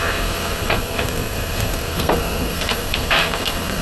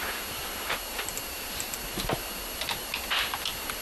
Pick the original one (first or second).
second